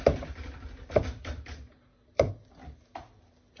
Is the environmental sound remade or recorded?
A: recorded